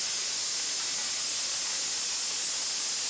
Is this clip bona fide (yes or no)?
yes